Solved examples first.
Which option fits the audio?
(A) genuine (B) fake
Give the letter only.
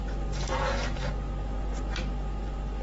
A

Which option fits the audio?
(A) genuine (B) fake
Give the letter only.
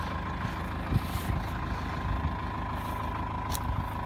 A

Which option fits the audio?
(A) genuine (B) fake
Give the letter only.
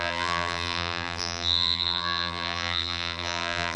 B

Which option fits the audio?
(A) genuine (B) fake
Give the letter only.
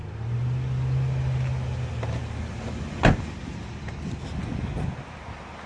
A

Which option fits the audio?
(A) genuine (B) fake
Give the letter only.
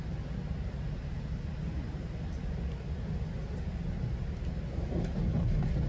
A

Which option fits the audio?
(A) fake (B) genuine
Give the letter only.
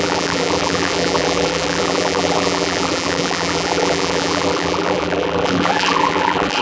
A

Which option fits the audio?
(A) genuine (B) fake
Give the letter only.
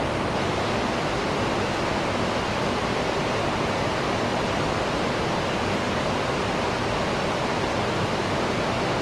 A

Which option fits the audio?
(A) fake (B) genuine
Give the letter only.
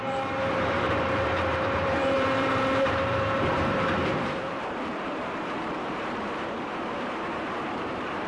A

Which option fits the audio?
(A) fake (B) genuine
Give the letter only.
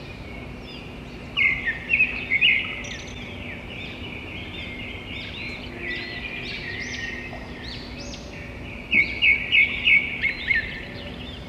B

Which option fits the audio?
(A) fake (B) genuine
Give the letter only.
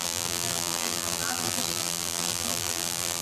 A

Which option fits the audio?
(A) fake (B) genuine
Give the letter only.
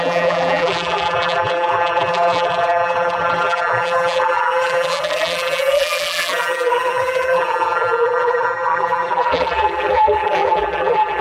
A